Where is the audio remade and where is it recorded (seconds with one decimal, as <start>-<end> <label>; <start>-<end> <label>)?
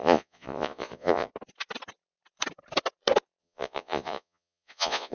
0.0-1.3 remade; 1.3-3.4 recorded; 3.4-5.1 remade